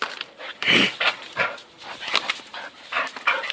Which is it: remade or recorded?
recorded